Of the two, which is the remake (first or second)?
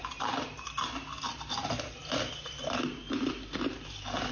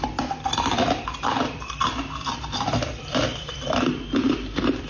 second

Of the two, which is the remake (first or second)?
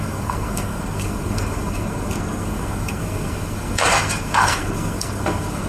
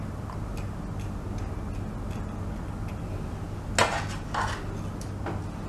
first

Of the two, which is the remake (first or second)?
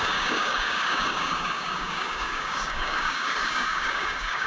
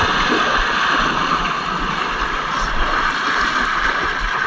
first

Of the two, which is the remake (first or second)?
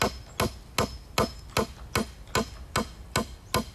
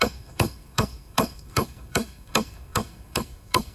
second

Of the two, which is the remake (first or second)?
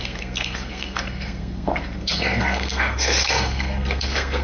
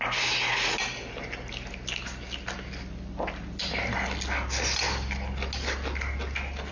first